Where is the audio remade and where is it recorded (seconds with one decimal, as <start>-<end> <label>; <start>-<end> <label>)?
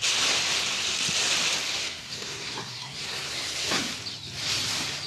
0.0-1.8 recorded; 1.8-3.9 remade; 3.9-5.1 recorded